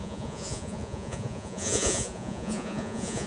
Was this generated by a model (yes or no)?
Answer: yes